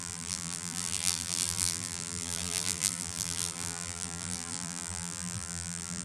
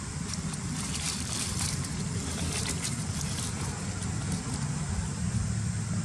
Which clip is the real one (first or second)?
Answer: second